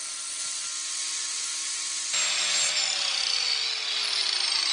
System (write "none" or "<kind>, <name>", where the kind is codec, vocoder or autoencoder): none